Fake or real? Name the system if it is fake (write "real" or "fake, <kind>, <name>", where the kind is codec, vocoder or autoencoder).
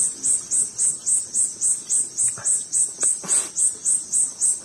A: real